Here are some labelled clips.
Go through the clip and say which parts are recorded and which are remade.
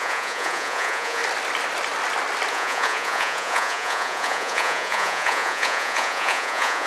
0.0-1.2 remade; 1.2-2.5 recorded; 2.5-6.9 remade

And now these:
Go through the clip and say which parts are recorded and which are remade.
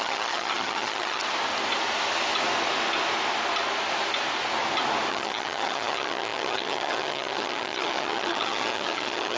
0.0-1.2 remade; 1.2-5.1 recorded; 5.1-9.4 remade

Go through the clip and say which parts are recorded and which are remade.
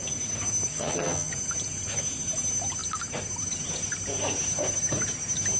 0.0-0.7 recorded; 0.7-1.3 remade; 1.3-5.6 recorded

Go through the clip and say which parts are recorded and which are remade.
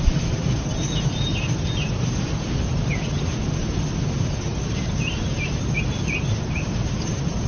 0.0-7.5 recorded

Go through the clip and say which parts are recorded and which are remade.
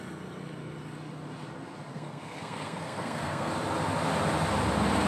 0.0-1.9 recorded; 1.9-3.5 remade; 3.5-5.1 recorded